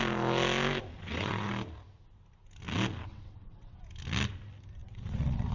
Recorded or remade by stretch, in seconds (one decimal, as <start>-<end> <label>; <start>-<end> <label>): 0.0-0.9 recorded; 0.9-1.5 remade; 1.5-3.1 recorded; 3.1-3.8 remade; 3.8-4.8 recorded; 4.8-5.5 remade